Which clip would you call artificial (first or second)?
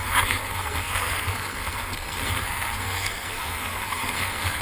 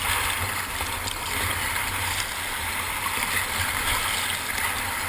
first